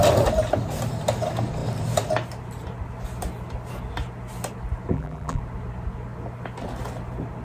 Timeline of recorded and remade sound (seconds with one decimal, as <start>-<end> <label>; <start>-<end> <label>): 0.0-4.9 recorded; 4.9-5.4 remade; 5.4-7.4 recorded

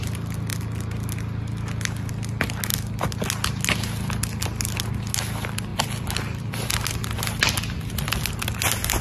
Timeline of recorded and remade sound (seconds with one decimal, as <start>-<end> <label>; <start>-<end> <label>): 0.0-5.7 recorded; 5.7-6.7 remade; 6.7-9.0 recorded